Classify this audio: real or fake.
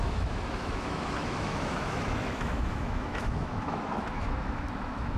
fake